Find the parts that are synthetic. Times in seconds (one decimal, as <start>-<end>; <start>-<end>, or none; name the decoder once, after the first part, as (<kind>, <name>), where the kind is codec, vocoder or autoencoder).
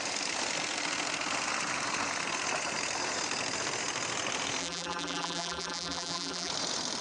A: 4.6-6.5 (vocoder, BigVGAN v2)